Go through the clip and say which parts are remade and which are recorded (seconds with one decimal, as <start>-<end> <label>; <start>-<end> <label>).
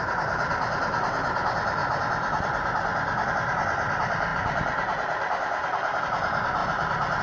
0.0-1.8 remade; 1.8-3.3 recorded; 3.3-7.2 remade